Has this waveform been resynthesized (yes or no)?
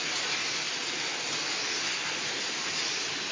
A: no